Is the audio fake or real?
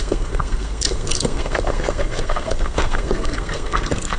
fake